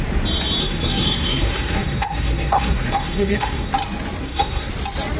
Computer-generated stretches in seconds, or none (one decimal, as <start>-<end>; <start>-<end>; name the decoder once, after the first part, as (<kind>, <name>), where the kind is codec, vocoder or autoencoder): 0.6-3.7 (codec, SNAC); 4.2-4.7